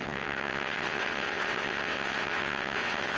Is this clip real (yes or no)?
no